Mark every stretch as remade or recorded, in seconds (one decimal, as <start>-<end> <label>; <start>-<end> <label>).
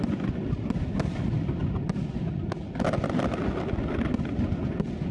0.0-5.1 recorded